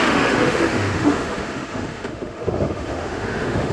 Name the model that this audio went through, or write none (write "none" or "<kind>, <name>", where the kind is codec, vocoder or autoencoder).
autoencoder, DAC-VAE